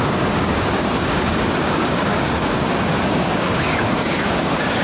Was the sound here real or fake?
fake